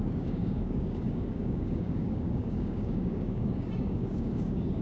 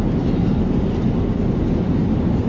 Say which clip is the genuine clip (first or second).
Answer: second